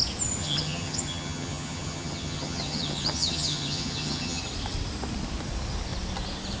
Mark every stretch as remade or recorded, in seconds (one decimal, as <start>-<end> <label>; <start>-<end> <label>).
0.0-0.4 recorded; 0.4-4.4 remade; 4.4-6.6 recorded